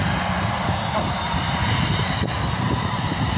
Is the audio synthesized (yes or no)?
yes